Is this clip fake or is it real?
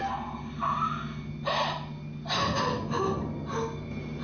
real